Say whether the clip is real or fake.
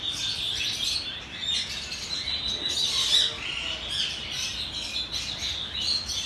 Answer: real